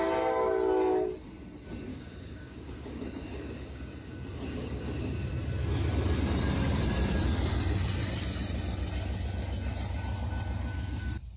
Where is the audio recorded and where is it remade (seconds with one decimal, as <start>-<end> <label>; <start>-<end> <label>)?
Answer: 0.0-1.9 recorded; 1.9-5.3 remade; 5.3-11.4 recorded